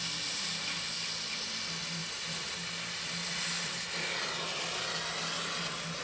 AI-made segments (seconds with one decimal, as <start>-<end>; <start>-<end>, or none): none